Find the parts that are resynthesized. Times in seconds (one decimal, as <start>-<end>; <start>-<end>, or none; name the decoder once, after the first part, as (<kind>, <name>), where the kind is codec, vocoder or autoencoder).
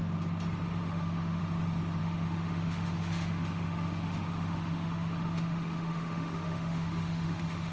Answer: 0.8-1.4 (autoencoder, DAC-VAE); 2.0-7.7